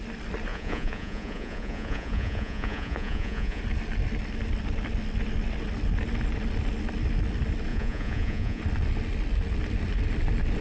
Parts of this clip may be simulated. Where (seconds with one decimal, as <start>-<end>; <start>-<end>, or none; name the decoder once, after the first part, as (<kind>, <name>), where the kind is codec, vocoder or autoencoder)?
0.5-3.6 (vocoder, Vocos); 7.7-8.6